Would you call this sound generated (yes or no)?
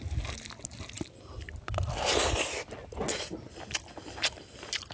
no